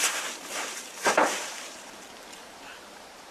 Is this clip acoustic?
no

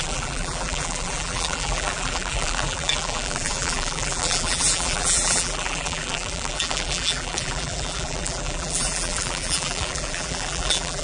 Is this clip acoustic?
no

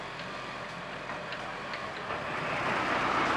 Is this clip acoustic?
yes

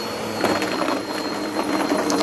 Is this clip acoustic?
no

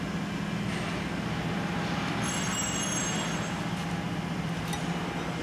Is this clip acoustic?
yes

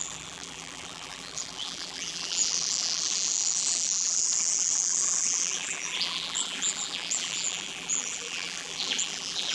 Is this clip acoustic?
no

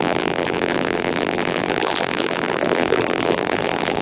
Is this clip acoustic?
no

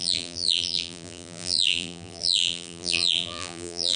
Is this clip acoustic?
no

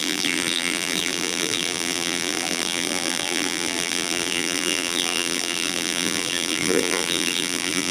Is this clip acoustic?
no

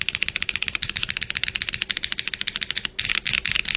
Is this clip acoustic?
yes